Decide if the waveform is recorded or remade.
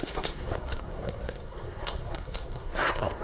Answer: remade